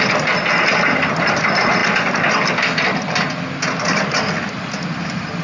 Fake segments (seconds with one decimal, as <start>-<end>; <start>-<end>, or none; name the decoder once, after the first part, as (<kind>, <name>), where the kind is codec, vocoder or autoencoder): none